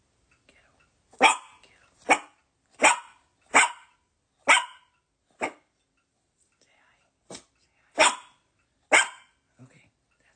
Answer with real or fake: real